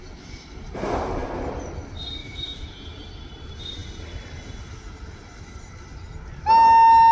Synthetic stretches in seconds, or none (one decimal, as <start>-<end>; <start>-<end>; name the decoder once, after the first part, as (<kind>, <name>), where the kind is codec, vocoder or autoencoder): 2.2-2.7 (autoencoder, DAC-VAE)